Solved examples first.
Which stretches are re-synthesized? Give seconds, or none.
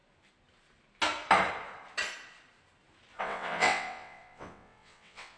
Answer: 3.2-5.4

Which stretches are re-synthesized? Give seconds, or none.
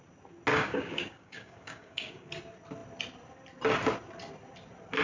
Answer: 0.5-2.3